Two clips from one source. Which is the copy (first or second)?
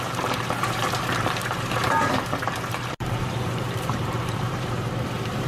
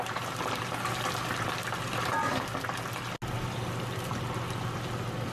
first